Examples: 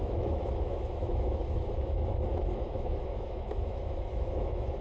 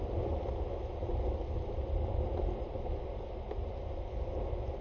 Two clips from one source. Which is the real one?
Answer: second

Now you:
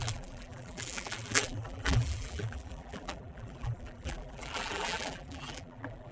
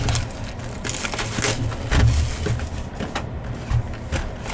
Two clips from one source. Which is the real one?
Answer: second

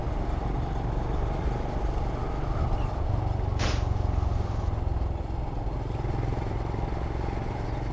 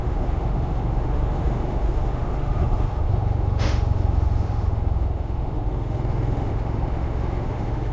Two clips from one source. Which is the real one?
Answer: first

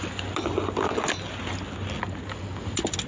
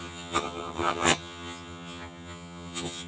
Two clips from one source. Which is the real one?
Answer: first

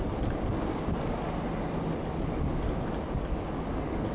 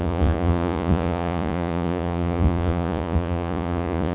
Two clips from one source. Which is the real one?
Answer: first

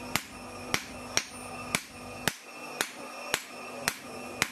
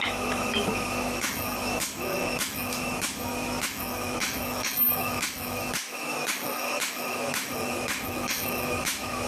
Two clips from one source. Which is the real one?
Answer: first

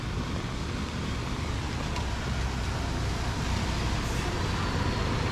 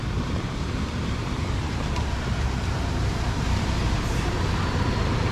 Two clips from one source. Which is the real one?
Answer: first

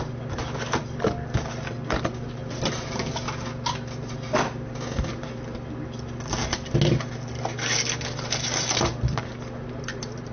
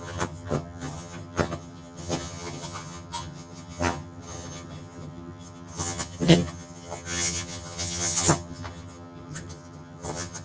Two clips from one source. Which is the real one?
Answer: first